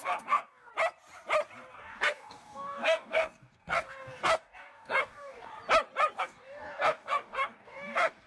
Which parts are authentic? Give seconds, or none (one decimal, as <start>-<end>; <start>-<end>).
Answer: 0.7-1.7; 5.5-6.2